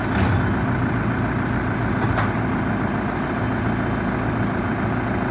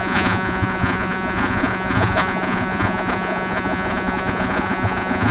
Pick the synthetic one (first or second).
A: second